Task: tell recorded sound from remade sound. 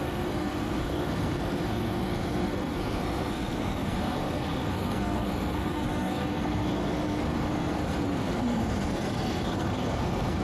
remade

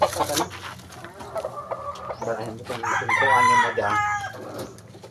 recorded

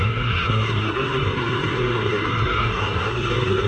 remade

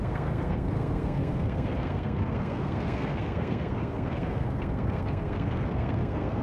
remade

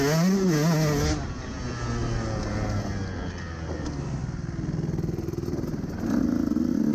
recorded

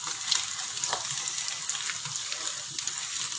recorded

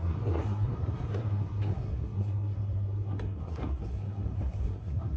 remade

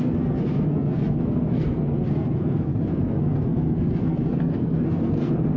remade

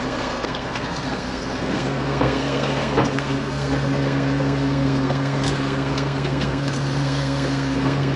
remade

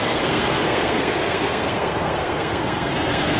remade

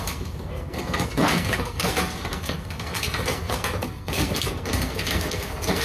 remade